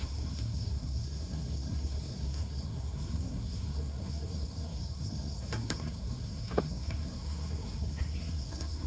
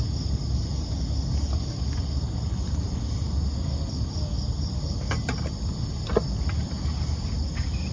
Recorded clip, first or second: second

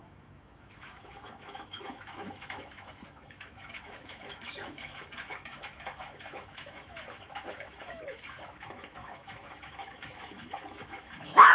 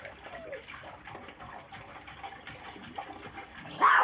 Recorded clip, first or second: second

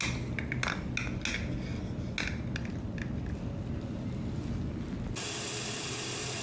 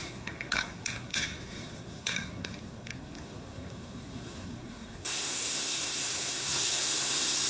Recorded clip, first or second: first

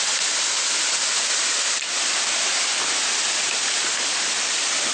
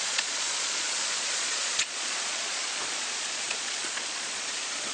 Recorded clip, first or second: first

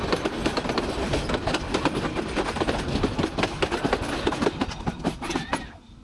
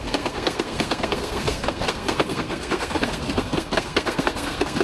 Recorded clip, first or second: first